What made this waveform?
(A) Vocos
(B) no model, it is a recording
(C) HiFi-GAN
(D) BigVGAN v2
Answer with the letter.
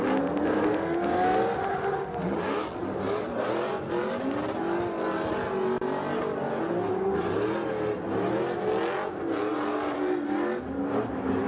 B